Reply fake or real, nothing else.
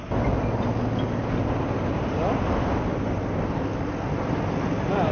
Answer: real